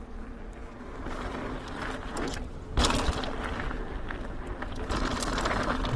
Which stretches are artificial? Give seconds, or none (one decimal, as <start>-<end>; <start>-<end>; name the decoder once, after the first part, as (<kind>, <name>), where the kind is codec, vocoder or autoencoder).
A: none